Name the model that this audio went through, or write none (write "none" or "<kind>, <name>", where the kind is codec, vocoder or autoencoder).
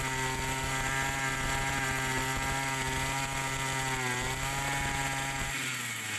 none